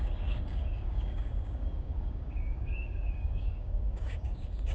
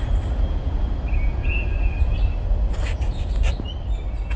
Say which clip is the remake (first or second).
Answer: first